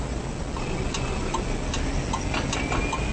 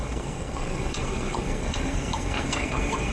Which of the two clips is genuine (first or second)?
first